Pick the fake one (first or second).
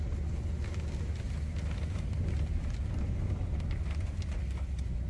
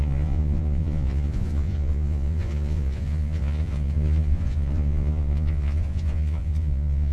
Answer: second